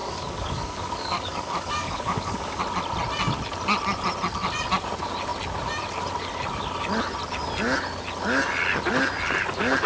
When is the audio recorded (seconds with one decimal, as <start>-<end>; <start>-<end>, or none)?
2.6-9.9